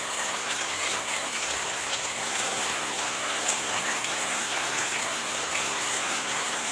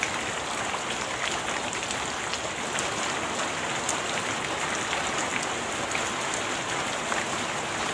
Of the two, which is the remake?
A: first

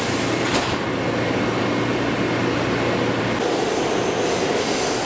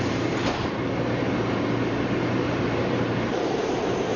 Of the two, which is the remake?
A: second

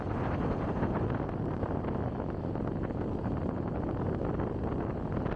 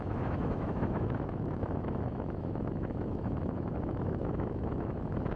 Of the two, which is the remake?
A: second